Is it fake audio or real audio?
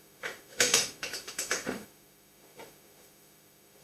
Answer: fake